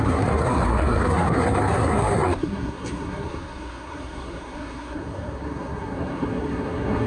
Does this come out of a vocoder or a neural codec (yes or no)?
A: yes